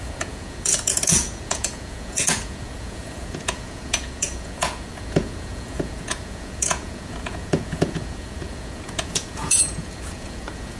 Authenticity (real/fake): fake